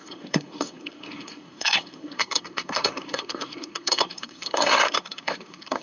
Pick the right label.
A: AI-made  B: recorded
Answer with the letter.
A